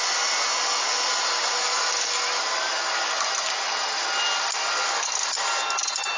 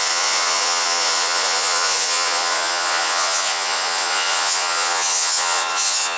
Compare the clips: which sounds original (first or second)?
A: first